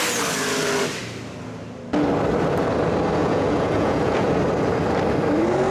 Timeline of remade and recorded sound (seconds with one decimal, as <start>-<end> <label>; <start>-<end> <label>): 0.0-3.2 recorded; 3.2-4.3 remade; 4.3-5.7 recorded